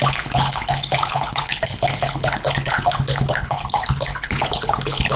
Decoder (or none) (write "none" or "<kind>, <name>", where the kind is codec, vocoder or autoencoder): codec, HILCodec